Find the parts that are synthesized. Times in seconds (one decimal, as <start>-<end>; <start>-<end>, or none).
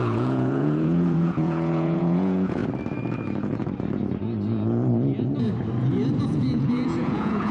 0.0-2.6; 6.2-7.5